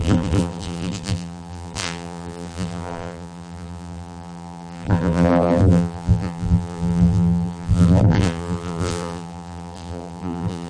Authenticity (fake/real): fake